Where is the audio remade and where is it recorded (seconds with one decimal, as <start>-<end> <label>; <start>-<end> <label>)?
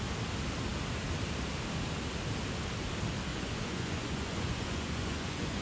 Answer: 0.0-3.3 recorded; 3.3-5.6 remade